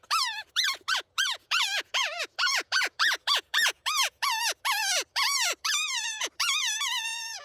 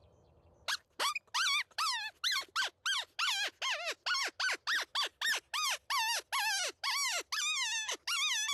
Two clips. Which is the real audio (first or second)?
second